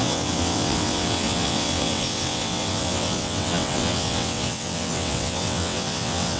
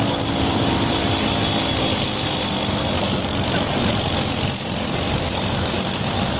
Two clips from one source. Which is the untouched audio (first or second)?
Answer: second